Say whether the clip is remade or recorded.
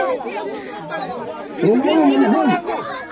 recorded